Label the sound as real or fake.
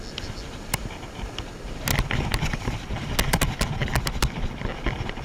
real